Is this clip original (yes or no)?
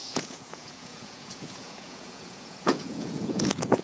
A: no